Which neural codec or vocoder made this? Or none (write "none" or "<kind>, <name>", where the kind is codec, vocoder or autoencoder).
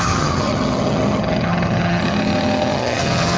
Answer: vocoder, HiFi-GAN